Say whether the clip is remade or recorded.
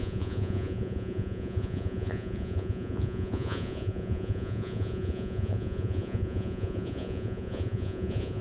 remade